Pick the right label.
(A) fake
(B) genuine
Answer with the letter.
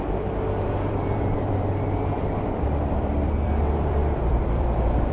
A